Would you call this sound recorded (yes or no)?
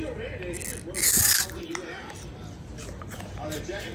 yes